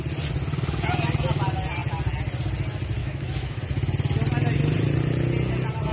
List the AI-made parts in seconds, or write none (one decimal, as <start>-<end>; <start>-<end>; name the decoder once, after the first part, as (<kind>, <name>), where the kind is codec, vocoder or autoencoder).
3.0-3.6 (autoencoder, DAC-VAE)